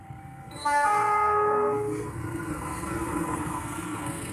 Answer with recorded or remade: remade